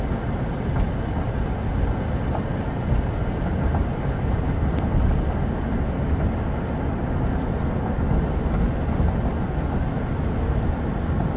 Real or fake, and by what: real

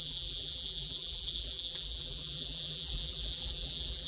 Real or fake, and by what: fake, vocoder, BigVGAN v2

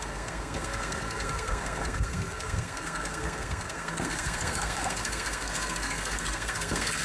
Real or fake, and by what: fake, codec, SNAC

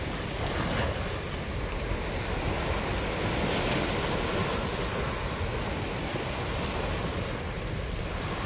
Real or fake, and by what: real